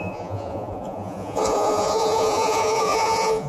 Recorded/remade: remade